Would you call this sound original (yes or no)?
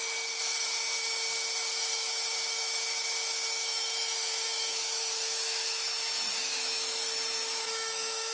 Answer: no